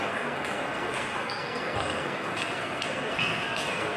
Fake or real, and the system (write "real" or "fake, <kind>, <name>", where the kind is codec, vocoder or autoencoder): fake, codec, SNAC